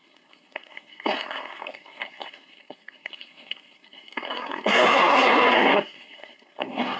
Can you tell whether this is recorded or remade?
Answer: remade